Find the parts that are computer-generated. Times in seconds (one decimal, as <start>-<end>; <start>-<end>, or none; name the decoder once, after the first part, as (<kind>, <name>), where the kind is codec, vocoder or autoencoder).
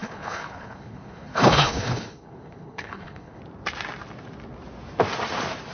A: 0.0-3.4 (codec, HILCodec)